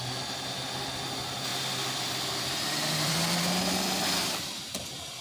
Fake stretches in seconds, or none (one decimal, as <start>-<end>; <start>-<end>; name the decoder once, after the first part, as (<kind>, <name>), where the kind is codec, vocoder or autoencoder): 1.5-4.6 (vocoder, BigVGAN v2)